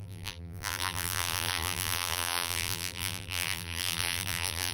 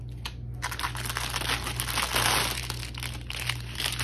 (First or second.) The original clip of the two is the second